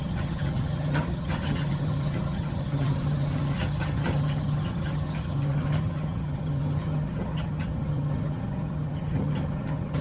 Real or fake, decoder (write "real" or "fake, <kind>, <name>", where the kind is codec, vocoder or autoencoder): fake, vocoder, HiFi-GAN